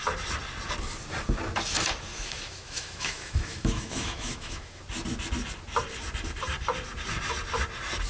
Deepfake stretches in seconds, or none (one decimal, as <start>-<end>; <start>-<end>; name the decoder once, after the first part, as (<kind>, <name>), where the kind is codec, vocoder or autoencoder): 2.1-4.8 (autoencoder, DAC-VAE)